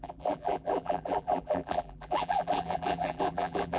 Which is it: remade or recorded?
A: remade